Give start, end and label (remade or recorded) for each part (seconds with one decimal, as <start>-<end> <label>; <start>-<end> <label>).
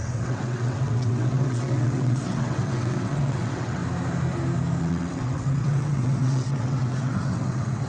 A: 0.0-3.8 remade; 3.8-4.8 recorded; 4.8-7.9 remade